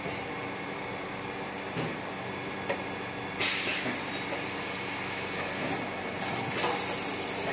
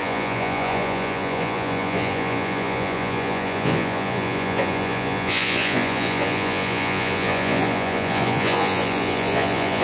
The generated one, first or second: second